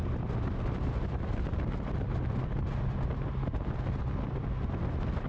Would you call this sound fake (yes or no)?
no